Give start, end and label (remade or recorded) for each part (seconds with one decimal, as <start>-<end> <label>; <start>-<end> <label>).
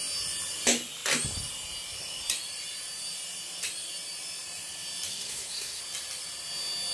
0.0-5.1 recorded; 5.1-5.8 remade; 5.8-6.9 recorded